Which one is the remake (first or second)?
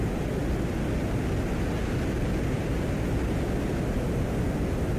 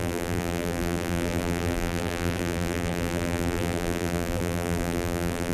second